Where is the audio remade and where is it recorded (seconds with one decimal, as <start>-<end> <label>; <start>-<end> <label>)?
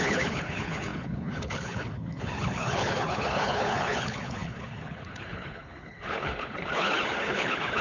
0.0-7.8 remade